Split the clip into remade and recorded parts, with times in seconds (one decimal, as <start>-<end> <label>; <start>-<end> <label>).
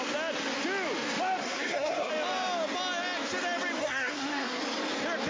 0.0-1.4 recorded; 1.4-2.1 remade; 2.1-3.8 recorded; 3.8-4.6 remade; 4.6-5.3 recorded